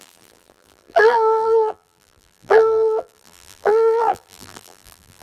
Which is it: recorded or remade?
remade